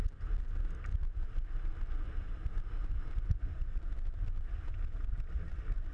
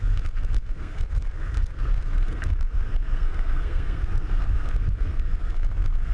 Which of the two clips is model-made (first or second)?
second